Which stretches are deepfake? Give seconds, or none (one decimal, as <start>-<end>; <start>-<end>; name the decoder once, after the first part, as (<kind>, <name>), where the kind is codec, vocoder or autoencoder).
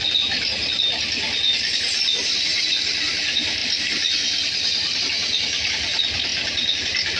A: 1.9-3.1 (vocoder, BigVGAN v2); 3.6-5.0